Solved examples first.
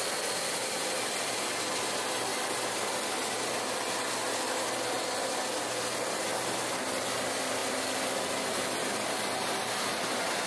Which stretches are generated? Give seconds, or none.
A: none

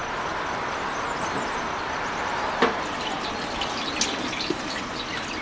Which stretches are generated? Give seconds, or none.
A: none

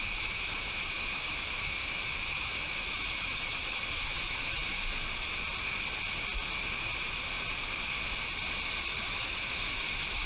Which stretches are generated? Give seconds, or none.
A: 0.0-4.8 (autoencoder, DAC-VAE); 9.0-10.3

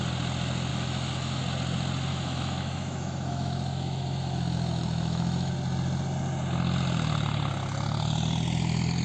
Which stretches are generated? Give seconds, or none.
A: 0.7-1.4 (autoencoder, DAC-VAE); 2.1-5.5

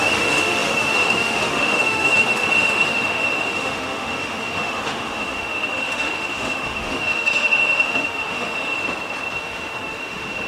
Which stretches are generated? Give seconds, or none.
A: 0.0-8.8 (autoencoder, DAC-VAE); 9.4-10.5

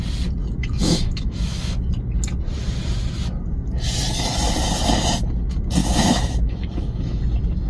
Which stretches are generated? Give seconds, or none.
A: 0.6-1.8 (autoencoder, DAC-VAE); 5.8-7.2

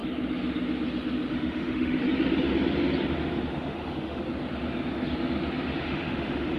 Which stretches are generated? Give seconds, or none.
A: 1.3-2.0 (autoencoder, DAC-VAE); 3.5-4.2; 5.8-6.6

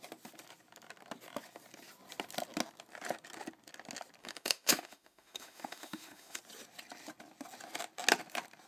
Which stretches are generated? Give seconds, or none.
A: 4.2-6.4 (autoencoder, DAC-VAE)